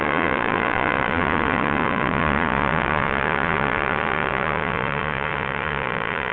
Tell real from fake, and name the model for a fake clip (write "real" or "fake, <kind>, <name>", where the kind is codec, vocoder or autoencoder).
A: fake, vocoder, Vocos